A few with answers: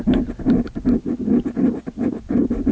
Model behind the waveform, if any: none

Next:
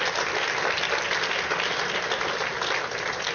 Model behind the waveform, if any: none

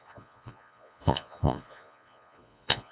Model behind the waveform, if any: vocoder, Vocos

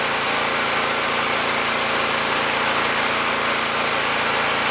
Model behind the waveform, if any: none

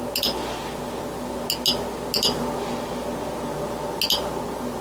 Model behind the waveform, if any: none